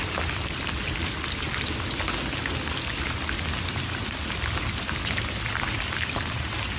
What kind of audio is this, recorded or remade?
recorded